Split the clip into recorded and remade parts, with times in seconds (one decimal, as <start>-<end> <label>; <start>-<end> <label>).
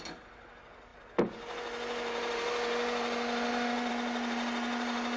0.0-5.2 recorded